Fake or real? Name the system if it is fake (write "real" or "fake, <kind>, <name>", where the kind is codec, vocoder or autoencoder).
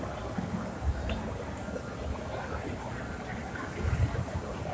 real